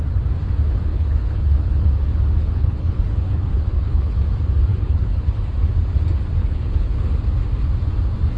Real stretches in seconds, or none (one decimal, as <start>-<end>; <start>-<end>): 0.0-0.9; 1.9-2.4; 4.2-4.7; 5.4-6.4; 7.2-8.4